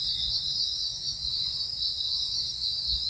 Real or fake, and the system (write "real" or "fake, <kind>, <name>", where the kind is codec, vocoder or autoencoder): fake, vocoder, Vocos